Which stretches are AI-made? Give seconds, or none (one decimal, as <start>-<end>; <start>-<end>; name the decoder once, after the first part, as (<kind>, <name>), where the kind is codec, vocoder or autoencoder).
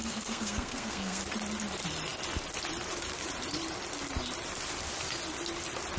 0.0-1.2 (codec, SNAC)